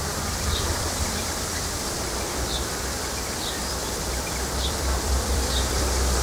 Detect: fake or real fake